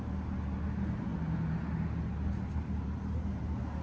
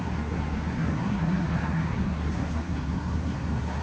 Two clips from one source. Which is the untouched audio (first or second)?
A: first